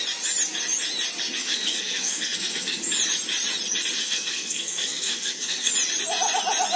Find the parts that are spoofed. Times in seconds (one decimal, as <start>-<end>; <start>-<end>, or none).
1.4-2.8; 4.0-5.7